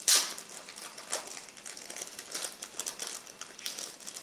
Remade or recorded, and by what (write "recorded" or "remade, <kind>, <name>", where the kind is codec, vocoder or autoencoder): recorded